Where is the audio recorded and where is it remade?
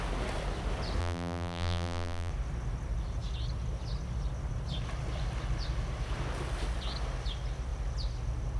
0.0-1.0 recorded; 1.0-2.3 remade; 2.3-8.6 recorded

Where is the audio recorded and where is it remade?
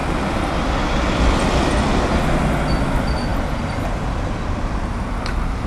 0.0-5.7 recorded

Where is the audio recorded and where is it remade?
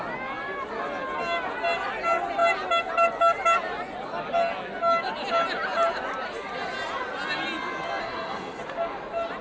0.0-8.0 recorded; 8.0-8.6 remade; 8.6-9.4 recorded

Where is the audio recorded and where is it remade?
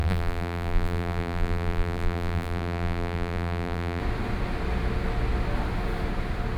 0.0-4.0 remade; 4.0-6.6 recorded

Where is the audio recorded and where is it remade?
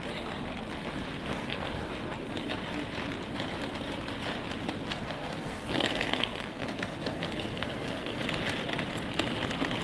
0.0-1.3 recorded; 1.3-1.9 remade; 1.9-4.9 recorded; 4.9-8.2 remade; 8.2-9.8 recorded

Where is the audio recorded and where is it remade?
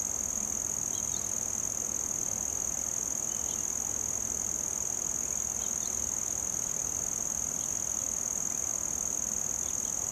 0.0-10.1 recorded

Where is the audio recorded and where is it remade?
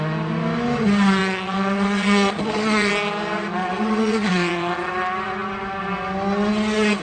0.0-1.2 recorded; 1.2-2.9 remade; 2.9-3.6 recorded; 3.6-4.9 remade; 4.9-7.0 recorded